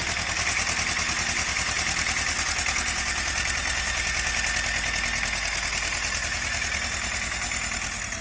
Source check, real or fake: real